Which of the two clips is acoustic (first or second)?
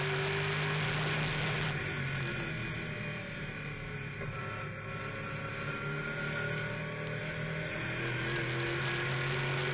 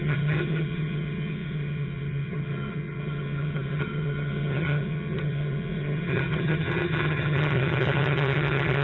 first